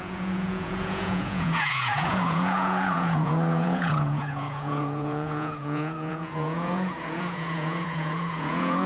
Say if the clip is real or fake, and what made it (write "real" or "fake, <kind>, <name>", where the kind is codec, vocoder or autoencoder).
fake, vocoder, Vocos